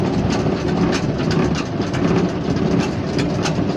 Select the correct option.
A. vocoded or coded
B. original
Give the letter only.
B